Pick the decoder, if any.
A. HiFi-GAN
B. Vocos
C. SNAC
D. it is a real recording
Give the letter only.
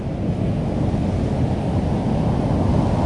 D